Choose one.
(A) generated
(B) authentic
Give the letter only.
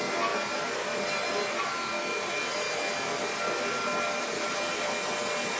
B